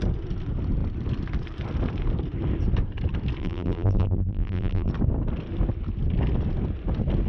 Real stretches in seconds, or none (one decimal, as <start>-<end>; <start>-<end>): 0.0-3.4; 4.9-7.3